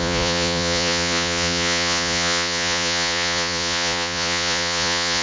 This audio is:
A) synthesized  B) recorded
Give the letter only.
A